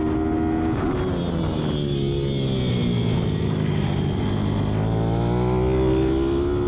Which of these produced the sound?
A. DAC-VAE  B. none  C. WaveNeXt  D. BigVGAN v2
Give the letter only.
B